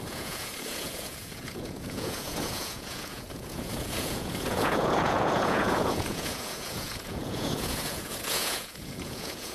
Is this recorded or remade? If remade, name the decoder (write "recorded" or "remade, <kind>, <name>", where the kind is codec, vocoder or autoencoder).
remade, vocoder, Vocos